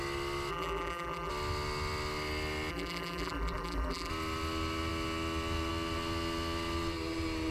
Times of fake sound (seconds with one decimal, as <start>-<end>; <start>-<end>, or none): 0.5-1.3; 2.7-4.1